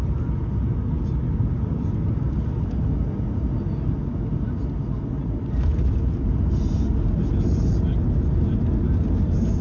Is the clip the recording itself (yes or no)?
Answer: yes